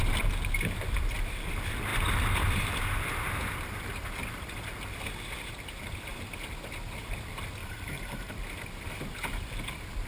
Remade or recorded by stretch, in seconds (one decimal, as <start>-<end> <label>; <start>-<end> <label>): 0.0-7.6 recorded; 7.6-8.3 remade; 8.3-10.1 recorded